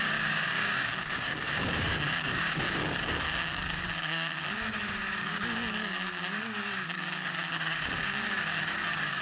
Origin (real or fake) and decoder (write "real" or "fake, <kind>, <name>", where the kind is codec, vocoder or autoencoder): fake, codec, DAC